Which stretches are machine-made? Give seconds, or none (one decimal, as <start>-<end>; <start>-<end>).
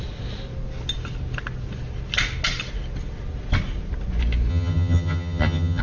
4.5-5.8